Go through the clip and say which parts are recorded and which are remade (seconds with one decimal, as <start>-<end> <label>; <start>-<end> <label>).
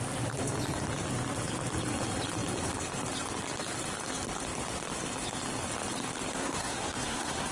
0.0-6.3 recorded; 6.3-7.5 remade